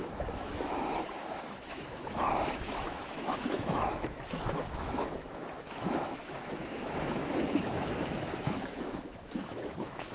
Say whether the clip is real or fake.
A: fake